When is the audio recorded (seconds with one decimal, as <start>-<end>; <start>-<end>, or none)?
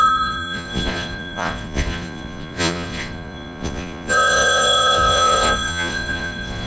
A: none